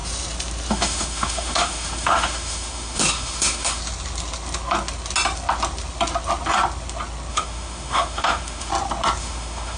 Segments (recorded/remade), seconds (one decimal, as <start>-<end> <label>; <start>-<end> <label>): 0.0-0.7 recorded; 0.7-3.8 remade; 3.8-7.3 recorded; 7.3-8.7 remade; 8.7-9.2 recorded; 9.2-9.8 remade

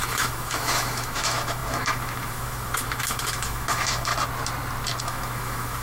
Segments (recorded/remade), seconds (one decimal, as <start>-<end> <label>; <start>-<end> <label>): 0.0-4.1 remade; 4.1-5.0 recorded; 5.0-5.8 remade

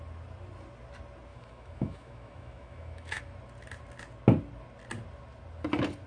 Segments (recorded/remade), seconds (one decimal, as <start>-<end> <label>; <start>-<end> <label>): 0.0-1.3 recorded; 1.3-3.2 remade; 3.2-6.1 recorded

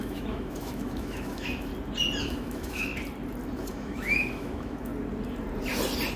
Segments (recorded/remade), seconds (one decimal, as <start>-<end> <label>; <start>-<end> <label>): 0.0-1.7 remade; 1.7-2.2 recorded; 2.2-2.9 remade; 2.9-3.7 recorded; 3.7-4.9 remade; 4.9-6.2 recorded

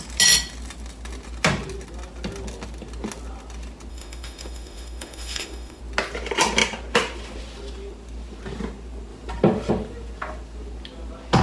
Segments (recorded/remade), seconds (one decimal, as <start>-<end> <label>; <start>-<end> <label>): 0.0-3.9 recorded; 3.9-5.8 remade; 5.8-11.4 recorded